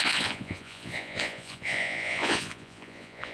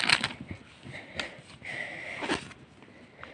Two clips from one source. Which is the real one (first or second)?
second